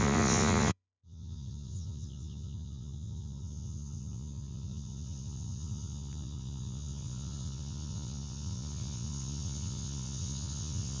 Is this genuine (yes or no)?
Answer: no